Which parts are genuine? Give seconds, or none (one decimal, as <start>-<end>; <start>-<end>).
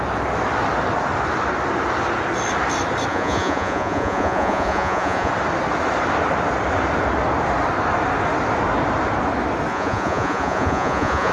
0.0-3.1; 5.3-9.7